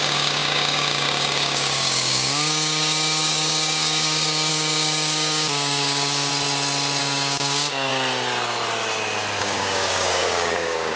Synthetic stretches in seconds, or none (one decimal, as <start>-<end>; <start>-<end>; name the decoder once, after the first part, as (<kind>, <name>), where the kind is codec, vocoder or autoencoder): 0.0-6.3 (codec, DAC); 7.0-7.9; 9.4-11.0